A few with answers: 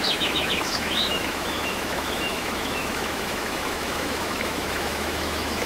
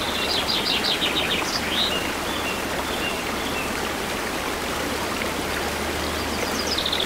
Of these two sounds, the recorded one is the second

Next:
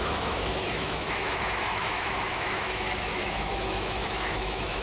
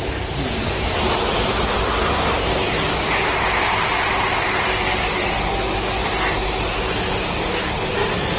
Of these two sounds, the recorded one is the second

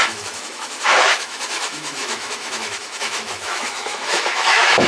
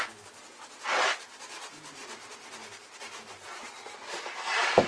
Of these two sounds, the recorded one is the second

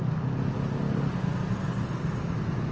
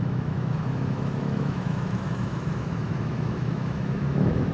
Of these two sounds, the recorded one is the first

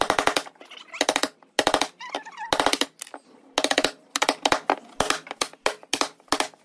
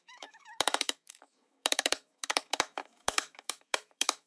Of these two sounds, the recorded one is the first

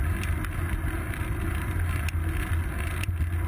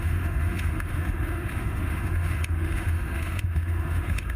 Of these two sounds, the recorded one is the first